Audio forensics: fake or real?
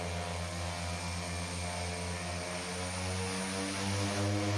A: real